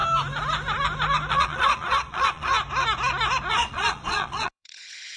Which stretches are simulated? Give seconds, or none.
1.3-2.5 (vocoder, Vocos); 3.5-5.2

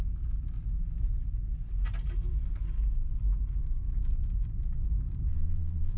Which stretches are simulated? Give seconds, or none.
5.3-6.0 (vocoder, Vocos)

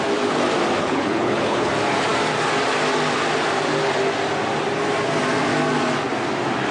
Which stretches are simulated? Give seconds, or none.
0.8-1.7 (codec, HILCodec)